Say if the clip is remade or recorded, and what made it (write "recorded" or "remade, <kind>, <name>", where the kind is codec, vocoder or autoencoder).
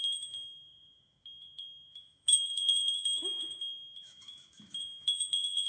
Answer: remade, autoencoder, DAC-VAE